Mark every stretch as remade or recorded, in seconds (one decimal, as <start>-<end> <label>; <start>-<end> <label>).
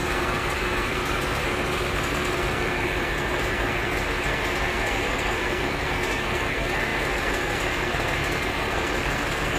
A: 0.0-9.6 remade